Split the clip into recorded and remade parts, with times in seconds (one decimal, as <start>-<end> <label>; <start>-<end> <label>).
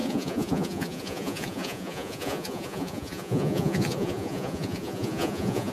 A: 0.0-5.7 remade